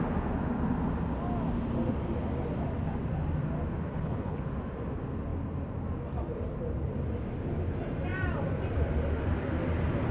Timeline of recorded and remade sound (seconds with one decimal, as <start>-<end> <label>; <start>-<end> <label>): 0.0-3.9 recorded; 3.9-4.4 remade; 4.4-10.1 recorded